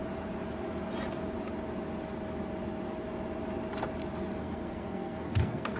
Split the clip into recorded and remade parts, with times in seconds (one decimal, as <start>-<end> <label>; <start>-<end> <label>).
0.0-4.4 recorded; 4.4-5.8 remade